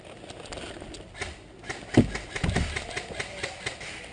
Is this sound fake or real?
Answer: real